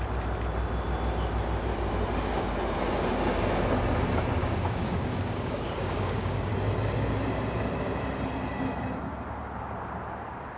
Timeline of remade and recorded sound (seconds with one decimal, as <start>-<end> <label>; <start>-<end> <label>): 0.0-4.4 recorded; 4.4-6.5 remade; 6.5-10.6 recorded